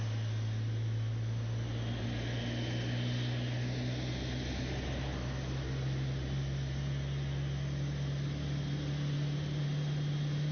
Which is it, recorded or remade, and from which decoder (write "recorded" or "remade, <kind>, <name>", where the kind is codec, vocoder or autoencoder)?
recorded